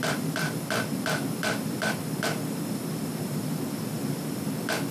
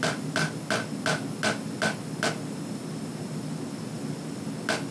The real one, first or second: second